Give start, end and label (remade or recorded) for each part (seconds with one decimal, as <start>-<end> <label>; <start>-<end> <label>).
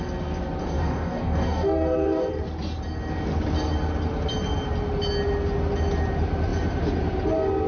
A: 0.0-0.6 recorded; 0.6-2.3 remade; 2.3-7.7 recorded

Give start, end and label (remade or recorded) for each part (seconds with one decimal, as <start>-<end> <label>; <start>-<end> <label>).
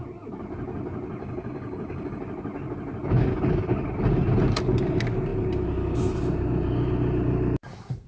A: 0.0-1.2 recorded; 1.2-2.2 remade; 2.2-8.1 recorded